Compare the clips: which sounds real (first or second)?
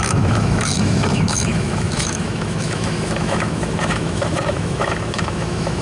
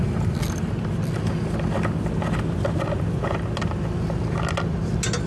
second